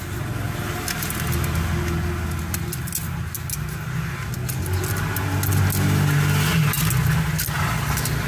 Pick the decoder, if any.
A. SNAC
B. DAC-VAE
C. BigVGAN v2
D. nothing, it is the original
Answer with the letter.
D